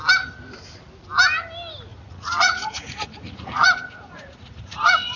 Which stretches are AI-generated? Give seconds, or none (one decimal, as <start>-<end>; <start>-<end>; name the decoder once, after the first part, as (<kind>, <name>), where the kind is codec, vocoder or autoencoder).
1.9-5.2 (vocoder, Vocos)